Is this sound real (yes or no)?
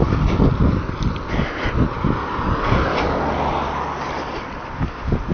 yes